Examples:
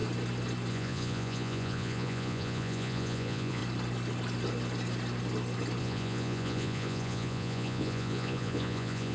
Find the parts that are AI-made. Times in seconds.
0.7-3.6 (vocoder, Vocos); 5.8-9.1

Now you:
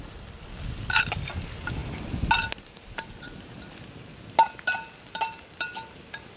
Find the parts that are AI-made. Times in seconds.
none

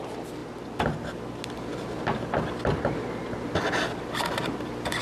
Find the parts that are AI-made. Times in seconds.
none

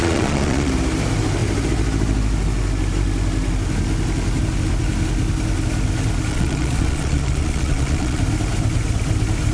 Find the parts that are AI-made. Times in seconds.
0.0-0.7 (vocoder, Vocos); 6.3-8.2